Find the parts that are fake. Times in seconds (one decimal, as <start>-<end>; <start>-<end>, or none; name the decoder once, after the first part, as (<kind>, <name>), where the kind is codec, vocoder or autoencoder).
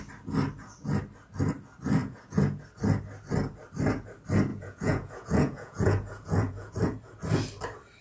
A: 2.0-2.6 (vocoder, Vocos); 4.5-6.7